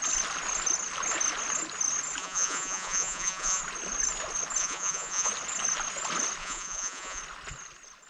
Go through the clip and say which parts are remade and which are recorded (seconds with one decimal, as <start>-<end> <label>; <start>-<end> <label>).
0.0-2.2 recorded; 2.2-3.6 remade; 3.6-4.6 recorded; 4.6-5.3 remade; 5.3-6.4 recorded; 6.4-7.2 remade; 7.2-8.1 recorded